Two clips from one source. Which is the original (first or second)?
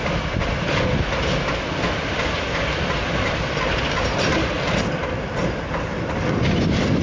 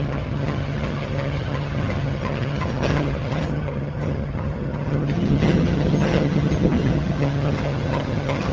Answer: first